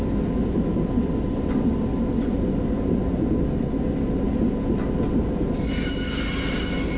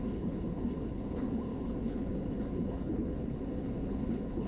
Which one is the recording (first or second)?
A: first